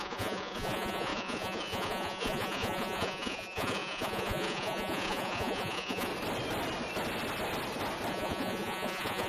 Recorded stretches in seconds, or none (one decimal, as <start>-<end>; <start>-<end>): 6.1-8.1